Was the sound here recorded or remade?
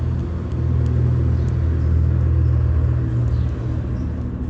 recorded